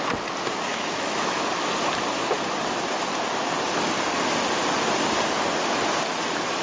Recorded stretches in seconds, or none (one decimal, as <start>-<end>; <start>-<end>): 0.0-0.7; 1.5-6.6